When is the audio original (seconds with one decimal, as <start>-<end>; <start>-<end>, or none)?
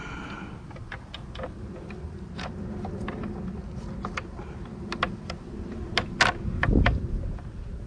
0.0-7.9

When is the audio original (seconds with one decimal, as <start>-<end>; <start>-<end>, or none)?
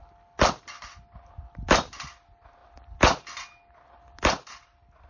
0.0-5.1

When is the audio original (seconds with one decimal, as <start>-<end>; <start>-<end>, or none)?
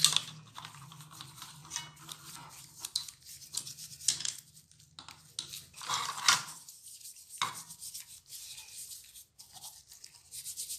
0.0-10.8